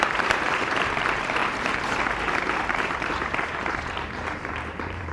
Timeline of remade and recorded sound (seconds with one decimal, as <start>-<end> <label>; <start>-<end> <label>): 0.0-5.1 remade